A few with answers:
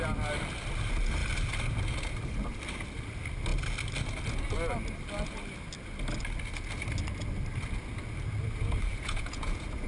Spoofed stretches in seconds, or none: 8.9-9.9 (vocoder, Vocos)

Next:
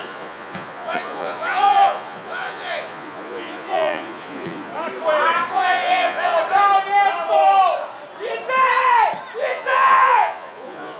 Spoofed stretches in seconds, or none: 0.0-4.7 (vocoder, Vocos); 5.5-6.3; 9.4-11.0

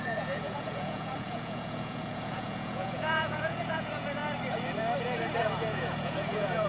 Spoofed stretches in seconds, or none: 0.0-4.2 (vocoder, Vocos); 5.0-6.7

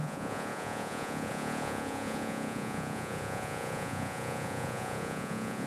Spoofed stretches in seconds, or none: 0.0-5.7 (vocoder, Vocos)